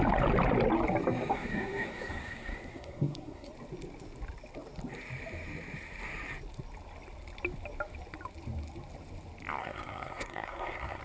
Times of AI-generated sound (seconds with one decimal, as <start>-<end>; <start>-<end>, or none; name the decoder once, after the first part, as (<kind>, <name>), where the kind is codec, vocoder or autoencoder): 1.3-3.5 (codec, SNAC); 9.6-11.0